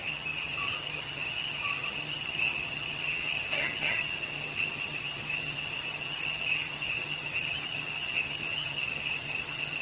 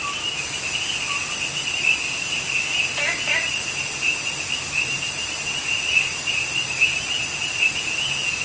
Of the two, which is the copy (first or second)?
first